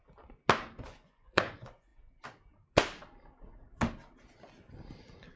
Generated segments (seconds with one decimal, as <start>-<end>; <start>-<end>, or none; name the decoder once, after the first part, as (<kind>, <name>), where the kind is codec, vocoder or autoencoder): 0.8-1.9 (vocoder, Vocos)